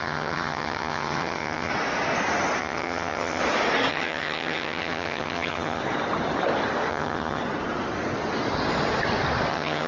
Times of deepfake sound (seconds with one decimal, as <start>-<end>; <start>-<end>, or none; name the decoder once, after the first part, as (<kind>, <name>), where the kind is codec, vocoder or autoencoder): 0.0-1.7 (vocoder, HiFi-GAN); 2.6-3.4; 3.9-5.8; 6.9-7.4; 9.5-9.9

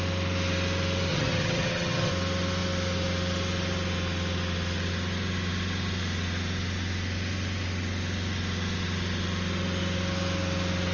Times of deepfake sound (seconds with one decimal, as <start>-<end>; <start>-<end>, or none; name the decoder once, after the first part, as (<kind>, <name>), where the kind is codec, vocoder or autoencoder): 1.1-2.1 (vocoder, HiFi-GAN)

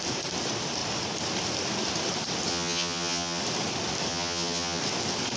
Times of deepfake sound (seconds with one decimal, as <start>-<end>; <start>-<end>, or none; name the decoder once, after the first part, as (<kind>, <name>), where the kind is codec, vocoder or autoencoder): 2.5-3.4 (vocoder, HiFi-GAN); 4.1-4.8

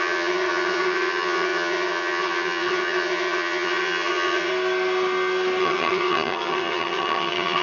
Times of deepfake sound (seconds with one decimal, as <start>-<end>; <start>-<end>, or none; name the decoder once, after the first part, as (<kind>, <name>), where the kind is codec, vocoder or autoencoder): 0.0-4.5 (vocoder, HiFi-GAN); 5.6-7.6

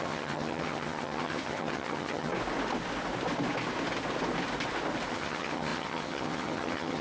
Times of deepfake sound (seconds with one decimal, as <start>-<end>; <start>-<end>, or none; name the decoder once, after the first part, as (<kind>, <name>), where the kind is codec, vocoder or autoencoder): 0.0-2.3 (vocoder, HiFi-GAN); 5.1-7.0